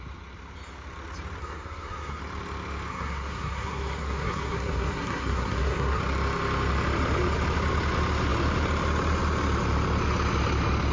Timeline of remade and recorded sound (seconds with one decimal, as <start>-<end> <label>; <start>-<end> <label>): 0.0-1.4 recorded; 1.4-2.2 remade; 2.2-2.9 recorded; 2.9-6.0 remade; 6.0-10.9 recorded